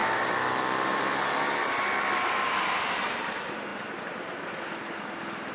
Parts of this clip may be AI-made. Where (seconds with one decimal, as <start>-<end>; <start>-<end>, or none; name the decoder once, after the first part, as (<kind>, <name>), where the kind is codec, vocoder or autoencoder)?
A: none

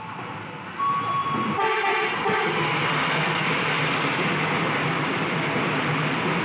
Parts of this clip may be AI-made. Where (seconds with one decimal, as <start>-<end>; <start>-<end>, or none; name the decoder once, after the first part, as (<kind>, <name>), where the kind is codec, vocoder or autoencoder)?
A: none

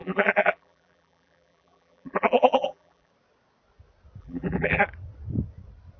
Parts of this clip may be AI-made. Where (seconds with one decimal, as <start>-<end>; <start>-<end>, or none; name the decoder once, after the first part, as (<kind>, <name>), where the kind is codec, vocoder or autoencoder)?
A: 0.0-3.1 (vocoder, BigVGAN v2); 4.2-4.8

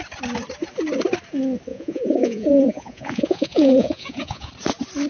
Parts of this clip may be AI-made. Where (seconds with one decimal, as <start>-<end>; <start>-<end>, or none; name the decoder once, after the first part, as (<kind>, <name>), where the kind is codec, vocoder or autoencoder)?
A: 1.7-4.5 (vocoder, Vocos)

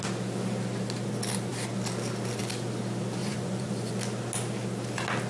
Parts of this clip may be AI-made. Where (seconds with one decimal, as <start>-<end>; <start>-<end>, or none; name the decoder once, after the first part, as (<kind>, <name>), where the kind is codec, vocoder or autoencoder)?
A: 3.2-4.0 (vocoder, Vocos)

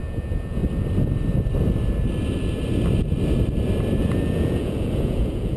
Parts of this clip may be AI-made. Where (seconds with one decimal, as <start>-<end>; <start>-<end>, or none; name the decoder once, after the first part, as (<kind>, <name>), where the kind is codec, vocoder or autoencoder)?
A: 0.0-0.6 (vocoder, Vocos); 4.0-5.6